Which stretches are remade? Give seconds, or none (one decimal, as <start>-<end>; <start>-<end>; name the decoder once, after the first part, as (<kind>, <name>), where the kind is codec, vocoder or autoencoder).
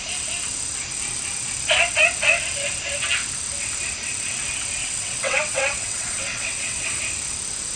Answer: 4.8-7.0 (vocoder, WaveNeXt)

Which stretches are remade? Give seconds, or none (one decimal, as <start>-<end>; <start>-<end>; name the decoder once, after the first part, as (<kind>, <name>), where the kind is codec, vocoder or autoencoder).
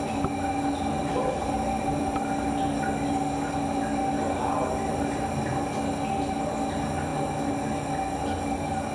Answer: none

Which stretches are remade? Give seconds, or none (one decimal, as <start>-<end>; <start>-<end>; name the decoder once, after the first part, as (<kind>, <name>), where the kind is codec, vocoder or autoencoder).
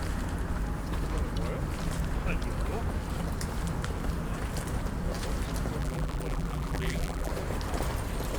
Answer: 5.8-7.3 (vocoder, BigVGAN v2)